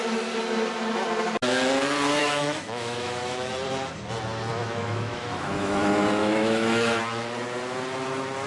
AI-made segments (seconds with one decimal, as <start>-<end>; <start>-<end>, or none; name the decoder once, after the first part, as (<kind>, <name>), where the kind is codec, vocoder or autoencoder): 2.2-3.5 (autoencoder, DAC-VAE); 4.5-5.8; 6.2-7.0